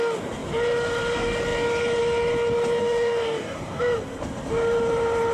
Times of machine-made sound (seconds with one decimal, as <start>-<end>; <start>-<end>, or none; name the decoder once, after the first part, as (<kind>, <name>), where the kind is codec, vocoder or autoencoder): 2.8-3.8 (codec, DAC)